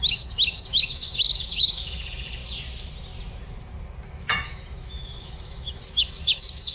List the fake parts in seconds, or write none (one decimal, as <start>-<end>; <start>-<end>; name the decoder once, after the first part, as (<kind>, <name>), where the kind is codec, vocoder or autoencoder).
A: 0.0-2.4 (autoencoder, DAC-VAE); 4.1-6.7